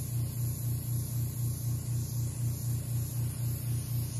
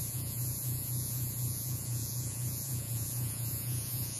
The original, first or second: first